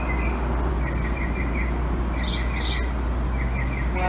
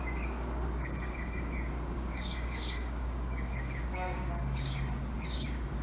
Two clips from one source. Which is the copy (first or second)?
second